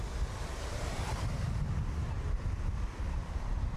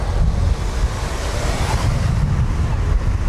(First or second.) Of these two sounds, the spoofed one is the first